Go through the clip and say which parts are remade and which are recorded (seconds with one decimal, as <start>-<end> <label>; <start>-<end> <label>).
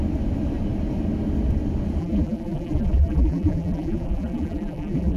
0.0-2.0 recorded; 2.0-5.2 remade